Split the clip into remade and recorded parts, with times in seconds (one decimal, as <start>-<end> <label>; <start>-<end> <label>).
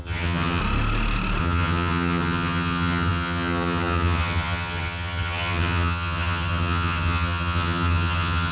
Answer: 0.0-0.6 remade; 0.6-1.4 recorded; 1.4-8.5 remade